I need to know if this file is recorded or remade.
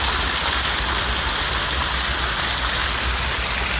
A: recorded